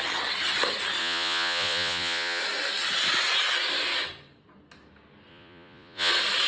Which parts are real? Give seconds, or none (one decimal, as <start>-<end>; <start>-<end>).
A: 0.0-1.0; 2.4-5.3; 6.1-6.5